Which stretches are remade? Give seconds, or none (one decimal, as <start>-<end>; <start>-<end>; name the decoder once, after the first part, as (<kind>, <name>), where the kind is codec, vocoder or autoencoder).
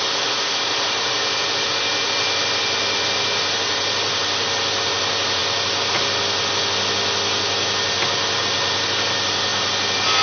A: none